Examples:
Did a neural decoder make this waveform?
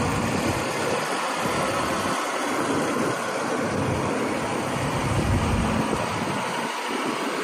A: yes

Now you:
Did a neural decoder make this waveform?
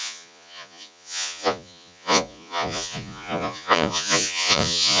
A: yes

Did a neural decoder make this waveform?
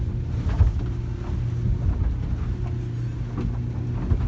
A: no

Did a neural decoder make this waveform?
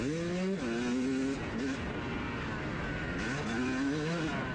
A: no